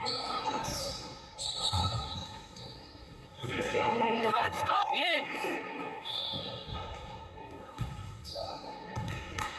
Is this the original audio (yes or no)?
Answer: no